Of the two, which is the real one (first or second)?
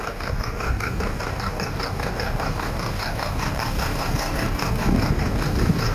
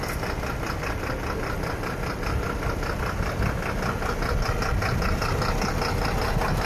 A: second